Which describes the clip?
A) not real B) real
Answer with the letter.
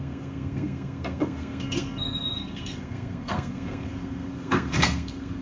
A